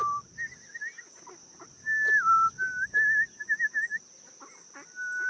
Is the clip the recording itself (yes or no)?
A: yes